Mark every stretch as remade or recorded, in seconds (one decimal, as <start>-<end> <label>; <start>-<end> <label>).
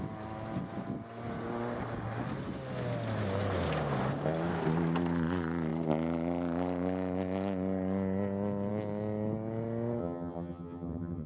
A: 0.0-10.0 recorded; 10.0-11.3 remade